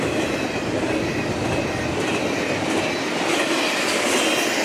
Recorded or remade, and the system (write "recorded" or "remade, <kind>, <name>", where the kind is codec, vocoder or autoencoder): recorded